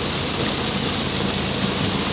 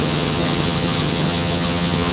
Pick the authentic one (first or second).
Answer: first